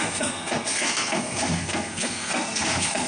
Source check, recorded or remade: remade